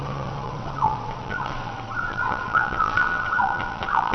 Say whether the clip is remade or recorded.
remade